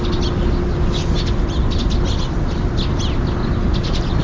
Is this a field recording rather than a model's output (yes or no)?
yes